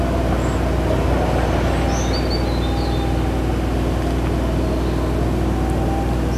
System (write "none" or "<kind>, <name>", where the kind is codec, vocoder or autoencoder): none